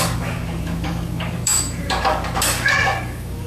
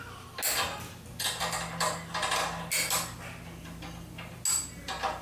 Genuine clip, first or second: second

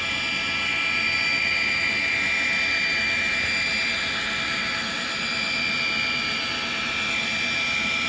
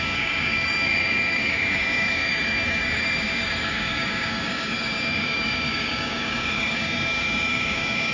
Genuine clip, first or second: first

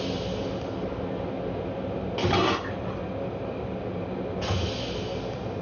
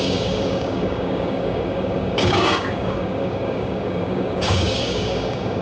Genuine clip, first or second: first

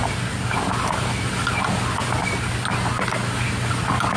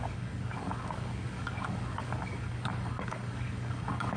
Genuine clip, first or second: first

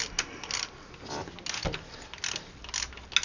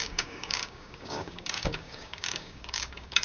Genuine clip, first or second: first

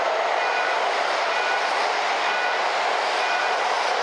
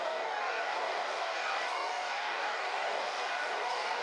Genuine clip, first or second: first